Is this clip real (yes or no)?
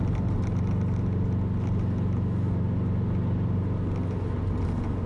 yes